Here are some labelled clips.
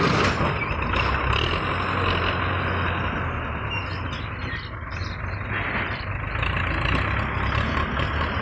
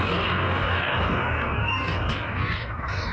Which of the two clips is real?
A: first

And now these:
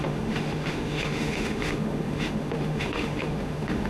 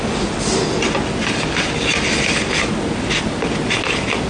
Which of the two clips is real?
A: second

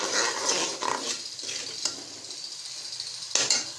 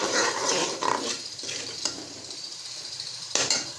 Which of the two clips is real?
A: first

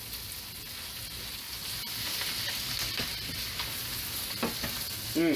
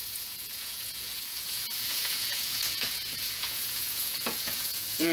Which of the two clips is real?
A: first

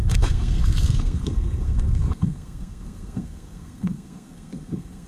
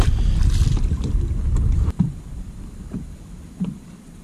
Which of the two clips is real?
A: second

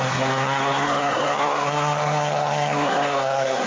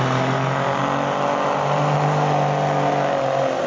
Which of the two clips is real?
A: second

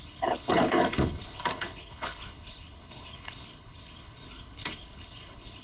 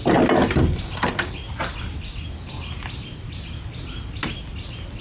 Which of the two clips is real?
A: second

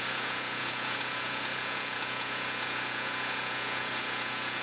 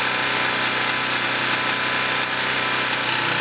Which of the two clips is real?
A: second